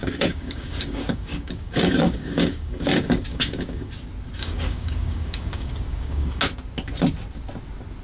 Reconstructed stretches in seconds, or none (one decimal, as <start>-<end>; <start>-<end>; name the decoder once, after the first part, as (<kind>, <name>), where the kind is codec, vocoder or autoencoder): 0.0-3.9 (codec, DAC); 4.4-6.4